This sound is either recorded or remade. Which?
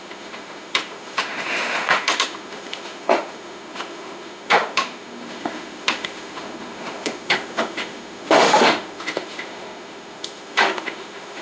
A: remade